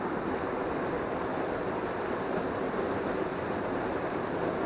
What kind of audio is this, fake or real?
real